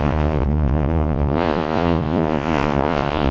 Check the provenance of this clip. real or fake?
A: fake